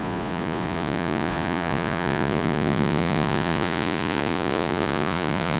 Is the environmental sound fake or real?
fake